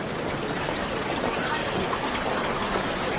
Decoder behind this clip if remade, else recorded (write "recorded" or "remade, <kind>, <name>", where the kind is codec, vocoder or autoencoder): recorded